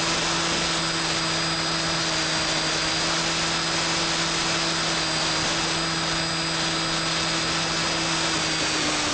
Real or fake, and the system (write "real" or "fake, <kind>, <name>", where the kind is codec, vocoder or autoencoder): real